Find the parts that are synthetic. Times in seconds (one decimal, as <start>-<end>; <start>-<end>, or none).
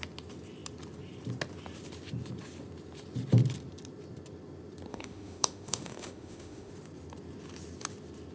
4.9-6.7